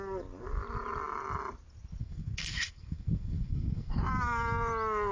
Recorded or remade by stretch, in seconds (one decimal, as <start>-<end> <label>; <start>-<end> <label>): 0.0-2.0 recorded; 2.0-4.0 remade; 4.0-5.1 recorded